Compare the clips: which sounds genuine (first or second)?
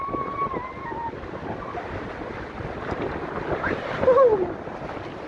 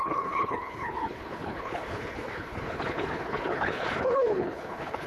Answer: first